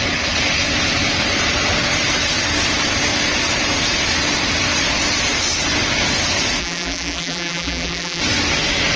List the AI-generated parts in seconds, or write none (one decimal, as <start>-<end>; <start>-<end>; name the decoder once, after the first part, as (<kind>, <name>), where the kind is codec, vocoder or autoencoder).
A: 6.6-8.2 (vocoder, BigVGAN v2)